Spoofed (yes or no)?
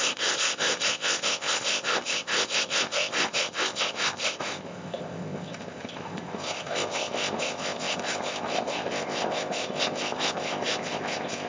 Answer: yes